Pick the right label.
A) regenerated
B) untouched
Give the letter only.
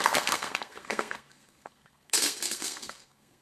A